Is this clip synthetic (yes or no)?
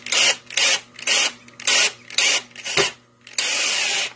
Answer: no